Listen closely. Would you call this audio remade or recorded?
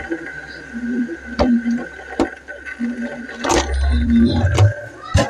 remade